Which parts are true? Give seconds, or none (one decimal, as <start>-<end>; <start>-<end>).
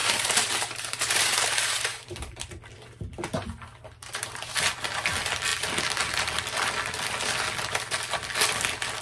2.6-4.0; 4.6-9.0